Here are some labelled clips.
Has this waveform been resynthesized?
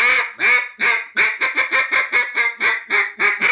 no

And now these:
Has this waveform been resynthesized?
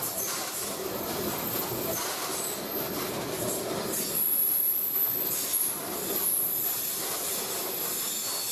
no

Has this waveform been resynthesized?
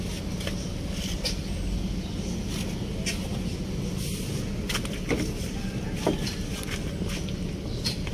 no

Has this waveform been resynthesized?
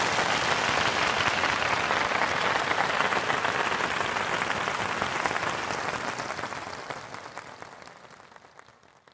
no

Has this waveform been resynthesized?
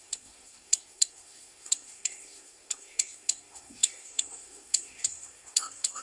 yes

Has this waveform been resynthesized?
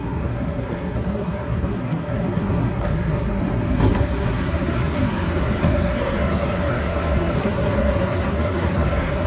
yes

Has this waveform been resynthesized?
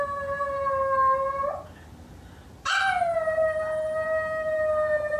no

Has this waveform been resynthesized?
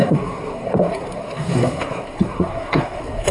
yes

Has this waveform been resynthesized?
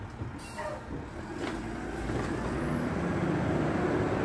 no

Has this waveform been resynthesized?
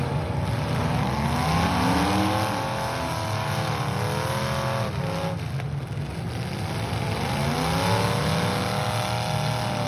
no